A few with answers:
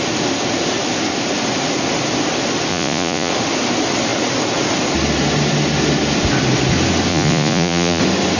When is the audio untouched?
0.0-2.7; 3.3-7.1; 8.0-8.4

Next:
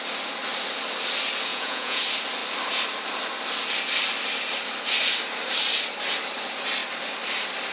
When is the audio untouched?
0.0-1.5; 2.0-7.7

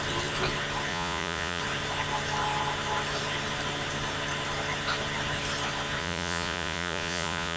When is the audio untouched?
0.0-0.9; 1.6-6.0

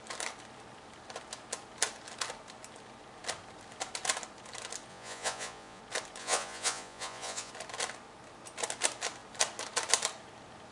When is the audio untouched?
0.0-4.9; 5.8-6.2; 7.5-10.7